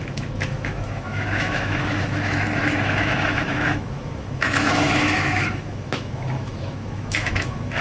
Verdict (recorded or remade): remade